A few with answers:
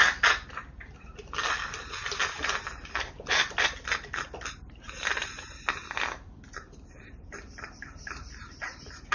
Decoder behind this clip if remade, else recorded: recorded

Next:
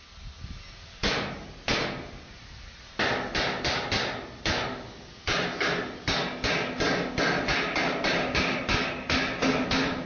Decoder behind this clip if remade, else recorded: recorded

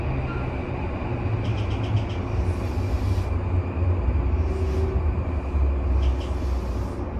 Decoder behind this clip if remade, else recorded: recorded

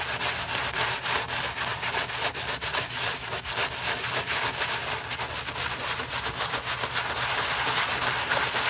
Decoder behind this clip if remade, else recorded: recorded